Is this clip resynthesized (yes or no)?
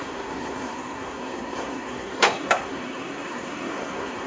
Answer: yes